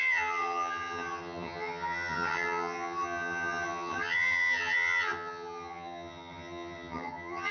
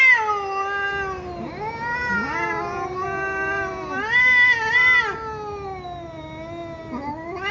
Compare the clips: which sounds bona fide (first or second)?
second